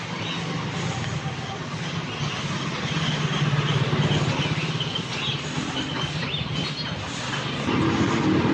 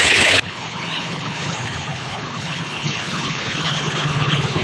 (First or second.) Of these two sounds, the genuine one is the first